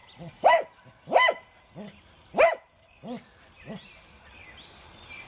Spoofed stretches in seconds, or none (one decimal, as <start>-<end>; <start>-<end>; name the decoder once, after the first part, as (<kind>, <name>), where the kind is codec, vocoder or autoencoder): 0.0-1.7 (vocoder, BigVGAN v2)